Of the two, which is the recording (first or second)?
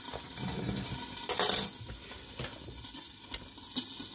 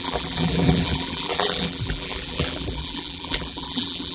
first